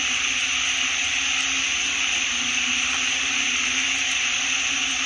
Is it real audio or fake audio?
real